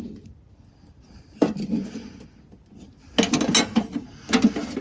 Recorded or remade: recorded